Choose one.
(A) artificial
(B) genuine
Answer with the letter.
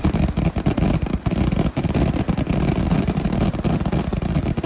A